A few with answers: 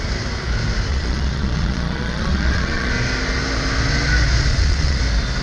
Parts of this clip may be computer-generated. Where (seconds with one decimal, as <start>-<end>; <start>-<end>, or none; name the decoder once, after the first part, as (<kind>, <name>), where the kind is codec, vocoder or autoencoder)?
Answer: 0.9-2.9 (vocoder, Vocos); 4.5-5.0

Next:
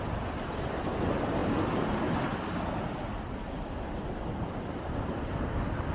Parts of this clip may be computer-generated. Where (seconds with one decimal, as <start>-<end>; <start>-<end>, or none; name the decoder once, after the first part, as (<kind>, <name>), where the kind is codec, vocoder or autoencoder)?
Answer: none

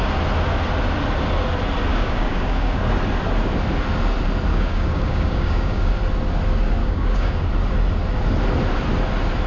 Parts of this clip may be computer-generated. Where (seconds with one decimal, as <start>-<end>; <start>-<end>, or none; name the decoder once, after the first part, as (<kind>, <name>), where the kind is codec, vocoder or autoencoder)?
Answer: 1.9-2.8 (codec, DAC); 4.5-5.9; 6.8-7.5

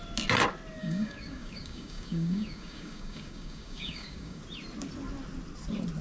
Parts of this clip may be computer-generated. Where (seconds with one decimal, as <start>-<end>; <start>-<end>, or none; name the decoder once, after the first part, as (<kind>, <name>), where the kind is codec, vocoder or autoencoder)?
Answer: 0.8-4.4 (codec, DAC)

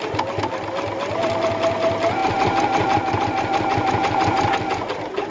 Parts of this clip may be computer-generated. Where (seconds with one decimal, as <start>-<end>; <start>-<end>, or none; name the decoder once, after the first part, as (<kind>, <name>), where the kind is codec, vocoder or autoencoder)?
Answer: none

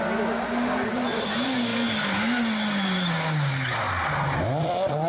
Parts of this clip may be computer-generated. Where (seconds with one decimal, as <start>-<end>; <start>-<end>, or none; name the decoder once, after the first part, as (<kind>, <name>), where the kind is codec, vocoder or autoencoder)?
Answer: none

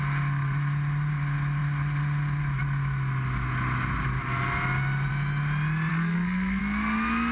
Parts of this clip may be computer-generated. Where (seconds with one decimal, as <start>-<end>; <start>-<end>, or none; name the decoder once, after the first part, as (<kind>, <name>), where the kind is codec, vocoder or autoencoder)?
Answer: 5.9-6.6 (codec, SNAC)

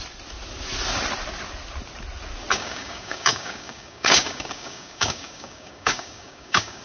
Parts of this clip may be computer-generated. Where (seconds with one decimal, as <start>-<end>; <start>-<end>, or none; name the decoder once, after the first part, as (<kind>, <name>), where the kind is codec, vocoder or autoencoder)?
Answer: 2.5-6.8 (codec, DAC)